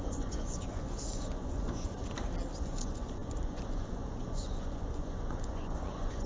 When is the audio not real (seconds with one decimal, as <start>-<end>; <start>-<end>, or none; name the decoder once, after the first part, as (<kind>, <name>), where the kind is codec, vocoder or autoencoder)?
0.0-2.0 (vocoder, Vocos); 2.6-6.3

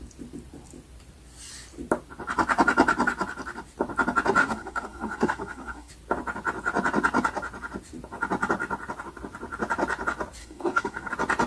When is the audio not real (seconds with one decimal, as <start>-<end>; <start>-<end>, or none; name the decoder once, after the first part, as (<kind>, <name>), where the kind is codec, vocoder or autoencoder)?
4.4-5.9 (codec, SNAC); 10.4-11.1

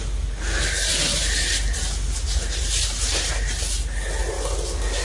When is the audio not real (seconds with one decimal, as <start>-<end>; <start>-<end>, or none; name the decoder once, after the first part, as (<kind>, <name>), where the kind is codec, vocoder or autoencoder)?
none

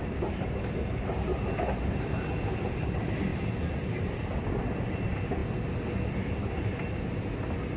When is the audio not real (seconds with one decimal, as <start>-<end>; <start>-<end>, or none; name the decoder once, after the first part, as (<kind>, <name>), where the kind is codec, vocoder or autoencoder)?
none

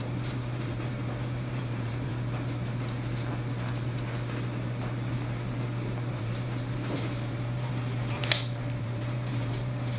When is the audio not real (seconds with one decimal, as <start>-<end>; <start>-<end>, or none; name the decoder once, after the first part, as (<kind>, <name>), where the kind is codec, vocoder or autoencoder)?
0.0-2.1 (vocoder, BigVGAN v2); 6.2-8.2; 8.8-10.0

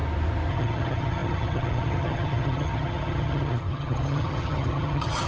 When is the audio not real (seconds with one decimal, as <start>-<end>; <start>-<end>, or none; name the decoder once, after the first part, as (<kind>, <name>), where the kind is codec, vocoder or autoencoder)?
0.5-5.3 (vocoder, HiFi-GAN)